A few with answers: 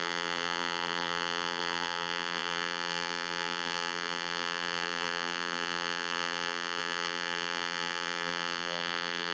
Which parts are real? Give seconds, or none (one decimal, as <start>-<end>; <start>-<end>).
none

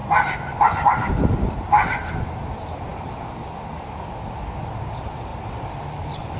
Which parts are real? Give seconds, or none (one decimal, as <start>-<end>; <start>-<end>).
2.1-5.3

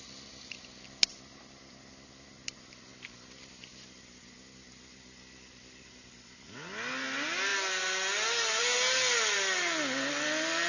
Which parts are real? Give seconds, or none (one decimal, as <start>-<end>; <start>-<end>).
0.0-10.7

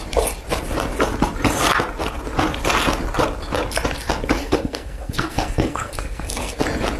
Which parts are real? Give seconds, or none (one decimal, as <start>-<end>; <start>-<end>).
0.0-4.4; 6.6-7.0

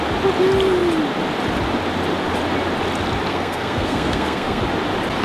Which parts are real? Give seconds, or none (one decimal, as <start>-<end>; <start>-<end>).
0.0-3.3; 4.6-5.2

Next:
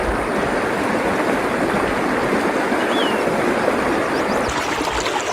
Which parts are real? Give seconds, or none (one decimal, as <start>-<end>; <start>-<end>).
0.0-5.3